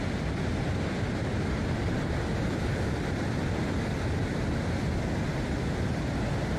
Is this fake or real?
real